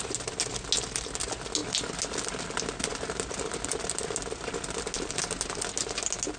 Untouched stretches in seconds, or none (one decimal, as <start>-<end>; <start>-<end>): 0.0-6.4